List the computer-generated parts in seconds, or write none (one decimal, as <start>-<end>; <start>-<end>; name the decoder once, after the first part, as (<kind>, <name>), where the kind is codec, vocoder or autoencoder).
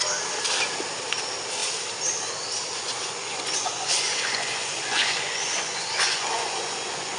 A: 2.8-7.2 (vocoder, Vocos)